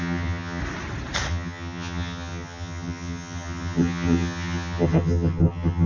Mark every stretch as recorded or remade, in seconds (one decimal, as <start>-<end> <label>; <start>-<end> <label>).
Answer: 0.0-0.6 remade; 0.6-1.3 recorded; 1.3-5.9 remade